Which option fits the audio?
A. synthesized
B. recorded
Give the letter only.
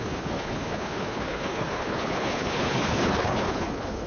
A